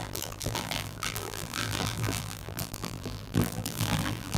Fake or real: fake